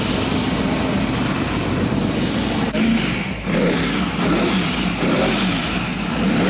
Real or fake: real